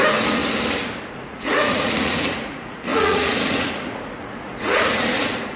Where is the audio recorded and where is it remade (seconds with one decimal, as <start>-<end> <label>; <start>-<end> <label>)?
0.0-0.4 remade; 0.4-1.1 recorded; 1.1-5.6 remade

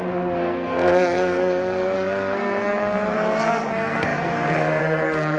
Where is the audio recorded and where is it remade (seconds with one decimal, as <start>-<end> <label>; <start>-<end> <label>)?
0.0-5.4 remade